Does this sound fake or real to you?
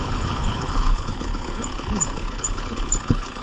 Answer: fake